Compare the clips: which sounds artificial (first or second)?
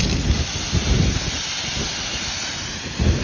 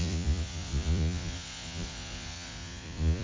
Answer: second